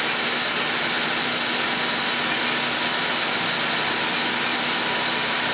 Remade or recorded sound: recorded